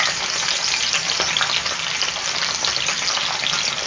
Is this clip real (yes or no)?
yes